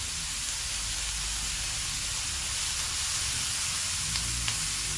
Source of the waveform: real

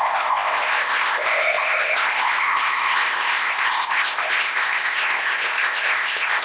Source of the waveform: fake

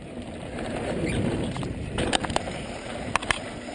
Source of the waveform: fake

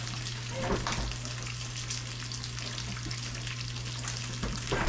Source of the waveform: real